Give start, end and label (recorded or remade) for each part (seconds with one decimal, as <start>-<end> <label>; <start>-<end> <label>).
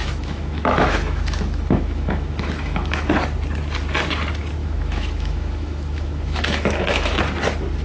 0.0-3.1 remade; 3.1-4.6 recorded; 4.6-7.2 remade; 7.2-7.8 recorded